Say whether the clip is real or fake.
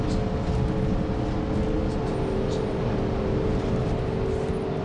real